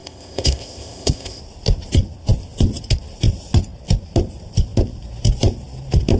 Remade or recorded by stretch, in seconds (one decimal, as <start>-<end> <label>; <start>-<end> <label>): 0.0-1.4 remade; 1.4-6.2 recorded